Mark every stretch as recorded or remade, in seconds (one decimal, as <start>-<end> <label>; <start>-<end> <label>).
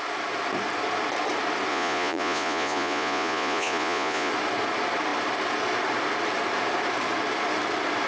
0.0-1.7 recorded; 1.7-4.3 remade; 4.3-8.1 recorded